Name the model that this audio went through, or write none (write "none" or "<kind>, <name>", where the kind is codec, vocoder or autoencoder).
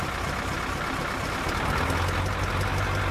none